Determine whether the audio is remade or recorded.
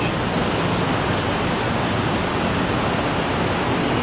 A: recorded